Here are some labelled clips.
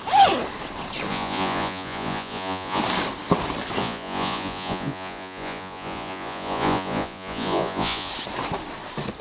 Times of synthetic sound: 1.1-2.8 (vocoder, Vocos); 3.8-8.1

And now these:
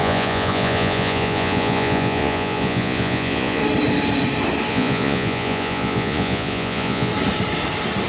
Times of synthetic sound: 0.0-3.6 (vocoder, Vocos); 4.7-7.1

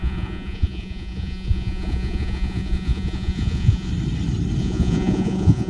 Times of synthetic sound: 0.0-3.9 (vocoder, Vocos); 4.6-5.7